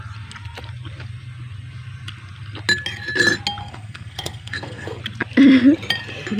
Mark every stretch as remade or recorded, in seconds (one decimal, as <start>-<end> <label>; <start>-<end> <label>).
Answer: 0.0-3.6 recorded; 3.6-5.0 remade; 5.0-6.4 recorded